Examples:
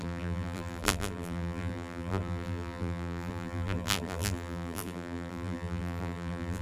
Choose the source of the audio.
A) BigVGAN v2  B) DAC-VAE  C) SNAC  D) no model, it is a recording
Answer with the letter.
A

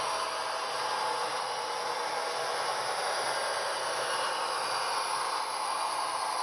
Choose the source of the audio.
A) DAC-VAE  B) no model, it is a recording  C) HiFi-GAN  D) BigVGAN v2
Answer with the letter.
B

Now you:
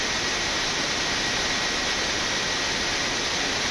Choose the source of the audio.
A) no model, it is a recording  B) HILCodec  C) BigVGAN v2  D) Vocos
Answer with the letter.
A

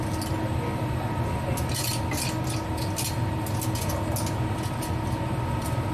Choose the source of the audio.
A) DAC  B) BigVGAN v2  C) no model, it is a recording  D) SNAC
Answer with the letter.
C